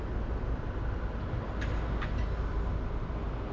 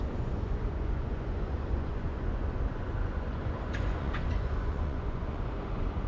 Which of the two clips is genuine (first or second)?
first